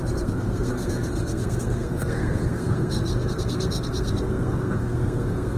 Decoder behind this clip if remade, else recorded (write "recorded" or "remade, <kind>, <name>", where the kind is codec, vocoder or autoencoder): remade, codec, SNAC